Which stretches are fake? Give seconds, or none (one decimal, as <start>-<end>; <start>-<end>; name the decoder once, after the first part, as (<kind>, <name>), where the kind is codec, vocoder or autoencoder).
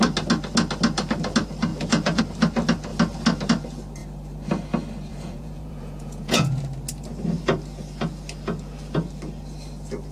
1.7-2.2 (vocoder, Vocos); 5.1-6.6